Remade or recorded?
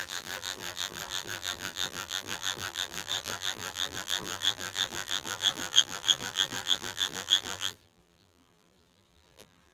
remade